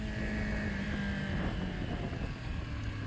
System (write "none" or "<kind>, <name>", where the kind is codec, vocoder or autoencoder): none